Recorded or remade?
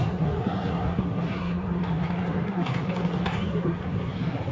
remade